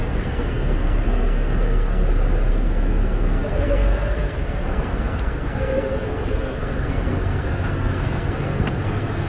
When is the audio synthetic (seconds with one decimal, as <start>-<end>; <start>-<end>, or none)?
0.0-2.0; 2.5-9.3